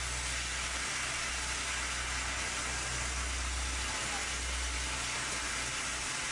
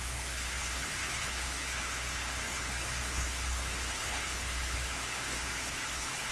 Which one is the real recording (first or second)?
first